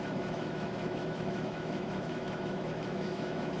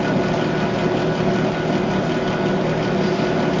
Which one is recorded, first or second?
second